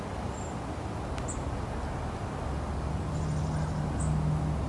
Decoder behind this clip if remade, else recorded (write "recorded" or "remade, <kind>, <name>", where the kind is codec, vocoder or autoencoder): recorded